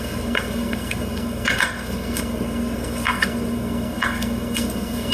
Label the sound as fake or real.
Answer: fake